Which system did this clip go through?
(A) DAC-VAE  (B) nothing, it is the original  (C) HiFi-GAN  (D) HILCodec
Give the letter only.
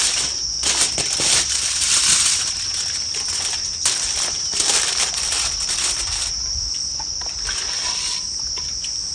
B